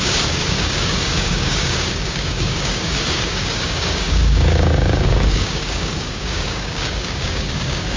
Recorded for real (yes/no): no